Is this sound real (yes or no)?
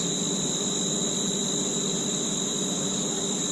yes